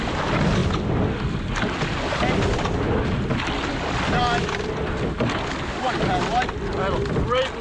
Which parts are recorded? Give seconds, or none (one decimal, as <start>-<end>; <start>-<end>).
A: 0.0-7.6